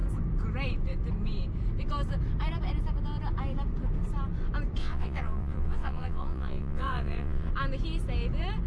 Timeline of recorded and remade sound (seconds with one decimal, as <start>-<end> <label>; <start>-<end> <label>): 0.0-4.8 recorded; 4.8-7.5 remade; 7.5-8.7 recorded